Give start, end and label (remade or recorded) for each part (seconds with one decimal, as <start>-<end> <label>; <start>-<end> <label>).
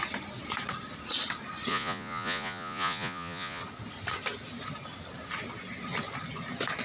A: 0.0-1.7 recorded; 1.7-3.6 remade; 3.6-6.8 recorded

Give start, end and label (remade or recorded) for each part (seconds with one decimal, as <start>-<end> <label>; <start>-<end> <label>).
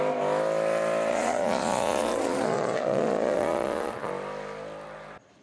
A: 0.0-1.1 recorded; 1.1-4.1 remade; 4.1-5.4 recorded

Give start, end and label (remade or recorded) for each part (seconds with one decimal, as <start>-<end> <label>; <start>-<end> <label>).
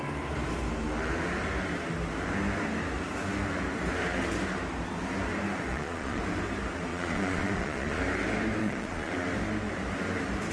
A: 0.0-5.7 recorded; 5.7-6.2 remade; 6.2-6.9 recorded; 6.9-8.0 remade; 8.0-8.6 recorded; 8.6-9.1 remade; 9.1-10.5 recorded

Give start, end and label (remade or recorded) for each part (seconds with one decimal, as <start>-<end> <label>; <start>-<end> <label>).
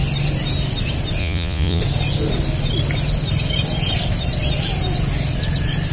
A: 0.0-1.2 recorded; 1.2-1.8 remade; 1.8-5.9 recorded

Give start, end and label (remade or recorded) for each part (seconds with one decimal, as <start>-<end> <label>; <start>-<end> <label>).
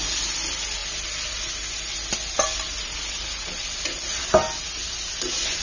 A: 0.0-5.6 recorded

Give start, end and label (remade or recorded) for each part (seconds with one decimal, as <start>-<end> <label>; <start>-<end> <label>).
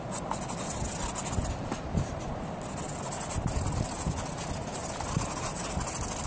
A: 0.0-6.3 recorded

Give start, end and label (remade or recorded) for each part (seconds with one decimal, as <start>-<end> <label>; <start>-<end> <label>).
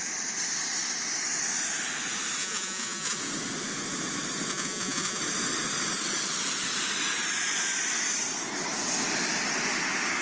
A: 0.0-2.4 recorded; 2.4-3.2 remade; 3.2-4.5 recorded; 4.5-5.2 remade; 5.2-10.2 recorded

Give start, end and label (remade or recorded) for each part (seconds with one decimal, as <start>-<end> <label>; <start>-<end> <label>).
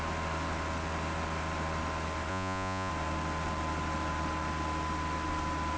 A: 0.0-2.3 recorded; 2.3-2.9 remade; 2.9-5.8 recorded